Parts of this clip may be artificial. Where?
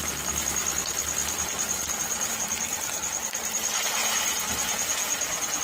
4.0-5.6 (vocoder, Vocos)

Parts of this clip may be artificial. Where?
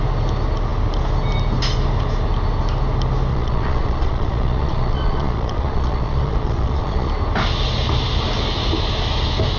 3.3-7.1 (vocoder, Vocos)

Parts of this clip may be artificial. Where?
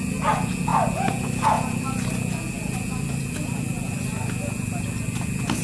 none